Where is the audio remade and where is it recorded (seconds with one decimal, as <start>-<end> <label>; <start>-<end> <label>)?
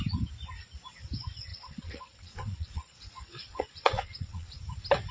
0.0-1.5 recorded; 1.5-4.6 remade; 4.6-5.1 recorded